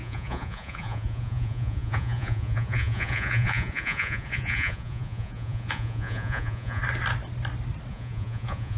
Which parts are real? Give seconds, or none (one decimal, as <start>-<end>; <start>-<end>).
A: 6.8-7.9